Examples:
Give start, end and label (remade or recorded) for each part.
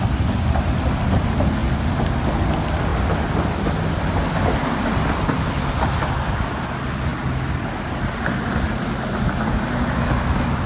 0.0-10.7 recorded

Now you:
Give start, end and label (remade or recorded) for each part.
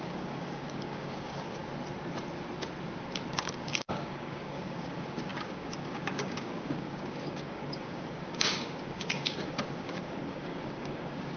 0.0-1.6 remade; 1.6-3.3 recorded; 3.3-11.4 remade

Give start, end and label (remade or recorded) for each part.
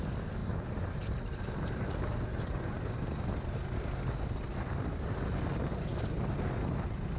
0.0-7.2 recorded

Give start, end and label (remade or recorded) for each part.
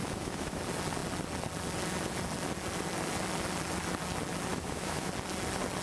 0.0-0.6 remade; 0.6-4.5 recorded; 4.5-5.1 remade; 5.1-5.8 recorded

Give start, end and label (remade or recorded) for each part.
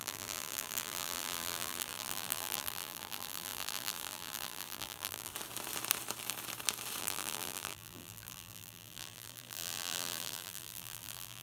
0.0-5.3 remade; 5.3-7.0 recorded; 7.0-11.4 remade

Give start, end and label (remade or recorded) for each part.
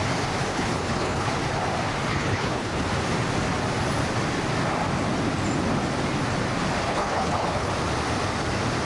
0.0-0.5 recorded; 0.5-1.3 remade; 1.3-2.1 recorded; 2.1-2.8 remade; 2.8-6.9 recorded; 6.9-7.7 remade; 7.7-8.8 recorded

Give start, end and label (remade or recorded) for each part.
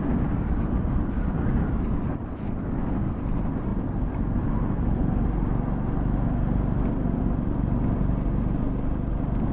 0.0-9.5 recorded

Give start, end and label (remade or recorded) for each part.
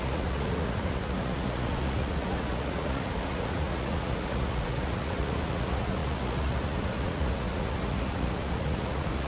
0.0-9.3 remade